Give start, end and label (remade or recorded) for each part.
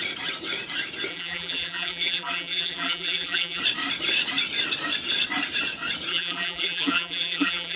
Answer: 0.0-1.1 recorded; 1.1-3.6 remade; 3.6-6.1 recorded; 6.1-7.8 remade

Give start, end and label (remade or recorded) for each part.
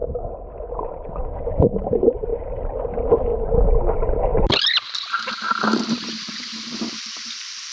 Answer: 0.0-0.7 recorded; 0.7-3.3 remade; 3.3-3.9 recorded; 3.9-7.7 remade